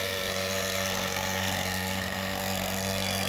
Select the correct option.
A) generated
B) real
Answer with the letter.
A